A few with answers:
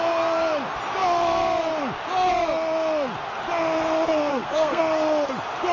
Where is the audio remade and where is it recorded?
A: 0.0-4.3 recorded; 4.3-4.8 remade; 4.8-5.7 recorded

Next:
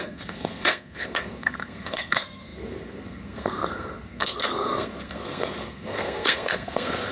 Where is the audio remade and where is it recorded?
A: 0.0-7.1 remade

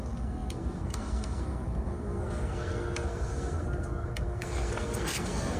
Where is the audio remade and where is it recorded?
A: 0.0-5.6 remade

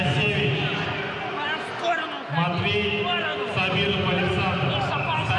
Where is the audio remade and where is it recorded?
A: 0.0-5.4 recorded

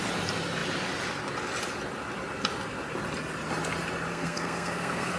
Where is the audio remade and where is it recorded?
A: 0.0-4.1 recorded; 4.1-5.2 remade

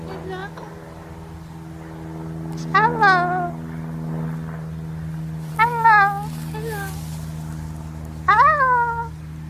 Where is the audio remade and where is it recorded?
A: 0.0-9.5 recorded